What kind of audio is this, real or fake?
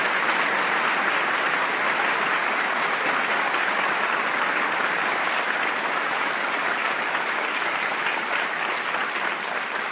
real